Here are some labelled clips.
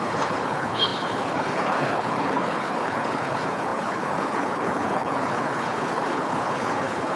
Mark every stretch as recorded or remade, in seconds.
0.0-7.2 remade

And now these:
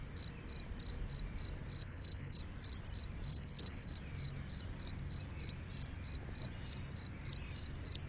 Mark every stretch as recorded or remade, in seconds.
0.0-1.8 recorded; 1.8-2.4 remade; 2.4-3.3 recorded; 3.3-3.9 remade; 3.9-8.1 recorded

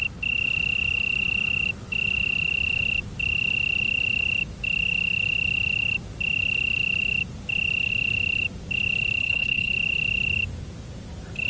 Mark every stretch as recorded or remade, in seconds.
0.0-9.2 recorded; 9.2-9.7 remade; 9.7-11.5 recorded

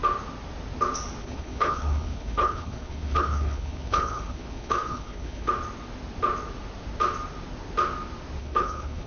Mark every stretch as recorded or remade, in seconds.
0.0-1.2 recorded; 1.2-5.5 remade; 5.5-8.4 recorded; 8.4-9.1 remade

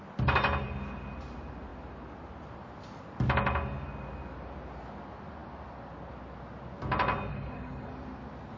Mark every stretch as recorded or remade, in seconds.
0.0-7.3 recorded; 7.3-7.9 remade; 7.9-8.6 recorded

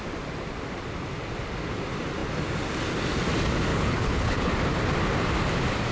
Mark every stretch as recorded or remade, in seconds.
0.0-3.7 recorded; 3.7-4.5 remade; 4.5-5.9 recorded

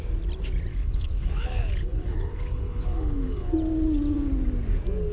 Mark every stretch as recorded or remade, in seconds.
0.0-0.7 recorded; 0.7-3.5 remade; 3.5-5.1 recorded